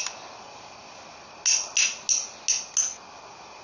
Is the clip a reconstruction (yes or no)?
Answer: no